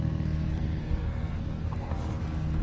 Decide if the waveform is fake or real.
fake